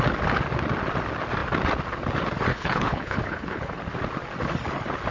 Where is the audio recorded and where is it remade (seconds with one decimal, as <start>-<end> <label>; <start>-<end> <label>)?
0.0-2.5 recorded; 2.5-3.8 remade; 3.8-5.1 recorded